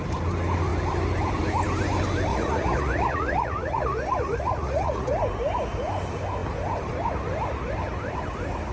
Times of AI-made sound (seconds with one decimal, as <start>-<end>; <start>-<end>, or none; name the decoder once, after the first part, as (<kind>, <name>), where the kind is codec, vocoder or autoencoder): 2.3-5.2 (vocoder, Vocos)